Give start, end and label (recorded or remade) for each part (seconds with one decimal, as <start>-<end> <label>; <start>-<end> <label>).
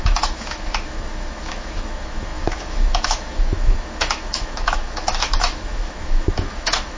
0.0-7.0 remade